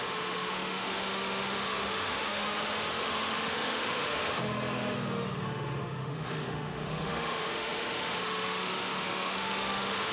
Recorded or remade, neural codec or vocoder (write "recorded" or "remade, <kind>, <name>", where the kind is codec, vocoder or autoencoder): remade, autoencoder, DAC-VAE